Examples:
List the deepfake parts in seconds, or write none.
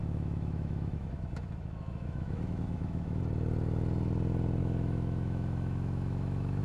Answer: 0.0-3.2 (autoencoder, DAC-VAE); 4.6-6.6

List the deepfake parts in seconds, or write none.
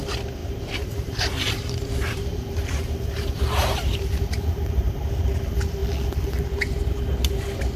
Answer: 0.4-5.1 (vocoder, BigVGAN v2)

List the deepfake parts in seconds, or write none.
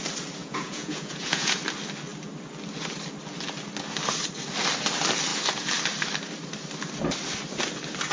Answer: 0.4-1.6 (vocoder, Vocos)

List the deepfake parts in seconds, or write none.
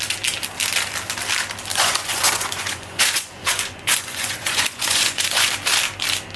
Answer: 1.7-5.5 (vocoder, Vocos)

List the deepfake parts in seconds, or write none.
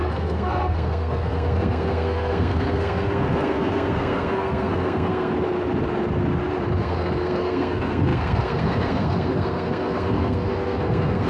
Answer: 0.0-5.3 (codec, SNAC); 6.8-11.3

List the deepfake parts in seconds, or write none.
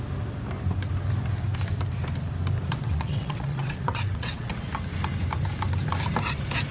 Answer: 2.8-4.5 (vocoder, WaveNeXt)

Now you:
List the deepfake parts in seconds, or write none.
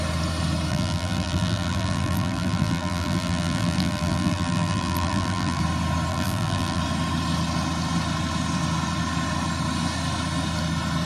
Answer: 0.7-5.6 (vocoder, BigVGAN v2); 6.1-6.8